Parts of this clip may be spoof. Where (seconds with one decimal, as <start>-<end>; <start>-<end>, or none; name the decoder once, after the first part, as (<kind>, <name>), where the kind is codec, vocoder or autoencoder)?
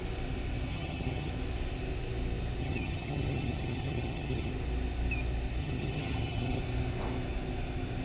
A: 0.7-1.3 (vocoder, HiFi-GAN); 2.6-4.5; 5.6-6.6